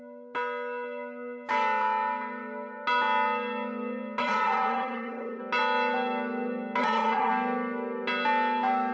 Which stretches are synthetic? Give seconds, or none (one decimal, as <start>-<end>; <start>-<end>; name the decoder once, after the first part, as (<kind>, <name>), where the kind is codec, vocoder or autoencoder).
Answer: 4.2-5.4 (vocoder, HiFi-GAN); 6.8-7.3